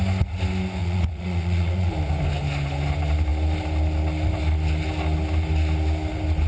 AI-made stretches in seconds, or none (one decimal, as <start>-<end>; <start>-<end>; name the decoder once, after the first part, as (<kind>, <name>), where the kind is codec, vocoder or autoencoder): 0.8-1.9 (vocoder, Vocos)